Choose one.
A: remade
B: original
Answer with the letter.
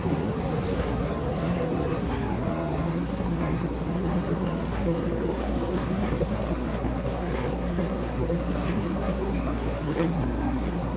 A